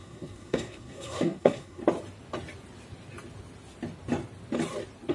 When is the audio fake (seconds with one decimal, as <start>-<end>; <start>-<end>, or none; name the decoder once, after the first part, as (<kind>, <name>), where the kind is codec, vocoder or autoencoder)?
0.0-1.8 (codec, SNAC)